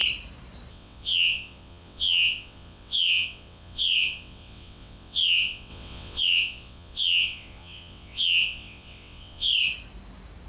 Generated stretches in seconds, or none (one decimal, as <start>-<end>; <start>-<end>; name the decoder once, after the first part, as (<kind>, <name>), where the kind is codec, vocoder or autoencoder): 0.7-9.5 (vocoder, WaveNeXt)

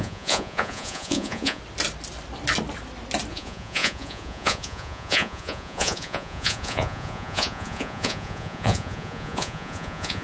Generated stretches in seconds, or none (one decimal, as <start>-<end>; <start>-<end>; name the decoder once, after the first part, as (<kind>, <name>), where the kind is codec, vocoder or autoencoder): 0.0-1.6 (vocoder, Vocos); 3.3-10.2

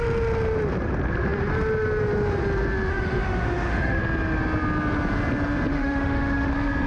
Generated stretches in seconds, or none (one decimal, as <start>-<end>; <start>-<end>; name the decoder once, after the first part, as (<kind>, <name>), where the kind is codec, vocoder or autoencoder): 2.9-4.0 (autoencoder, DAC-VAE); 5.7-6.5